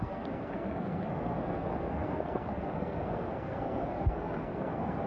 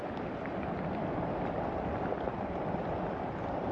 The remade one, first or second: first